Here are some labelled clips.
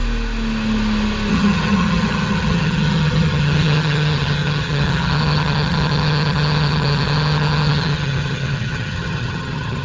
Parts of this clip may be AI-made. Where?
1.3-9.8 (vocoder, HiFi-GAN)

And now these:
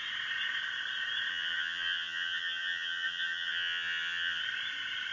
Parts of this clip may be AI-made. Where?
1.3-4.4 (vocoder, HiFi-GAN)

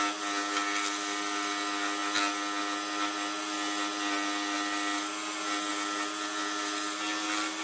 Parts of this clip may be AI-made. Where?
none